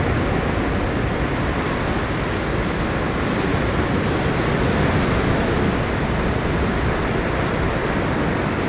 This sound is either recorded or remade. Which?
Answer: recorded